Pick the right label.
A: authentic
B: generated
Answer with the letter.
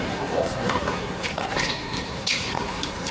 B